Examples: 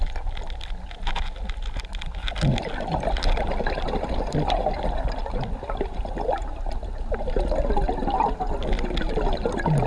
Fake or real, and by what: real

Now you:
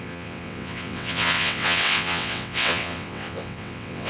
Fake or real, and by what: fake, vocoder, WaveNeXt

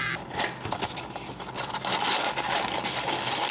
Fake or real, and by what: real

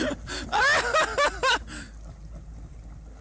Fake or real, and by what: real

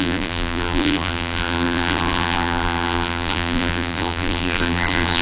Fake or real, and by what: fake, vocoder, BigVGAN v2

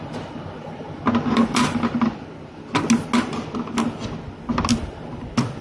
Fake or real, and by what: real